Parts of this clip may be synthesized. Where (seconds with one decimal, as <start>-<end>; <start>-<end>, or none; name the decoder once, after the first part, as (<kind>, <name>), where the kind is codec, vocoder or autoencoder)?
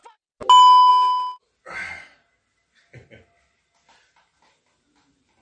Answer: none